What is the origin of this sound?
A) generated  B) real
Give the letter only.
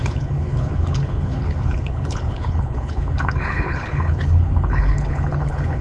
A